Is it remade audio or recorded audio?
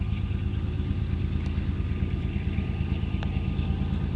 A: recorded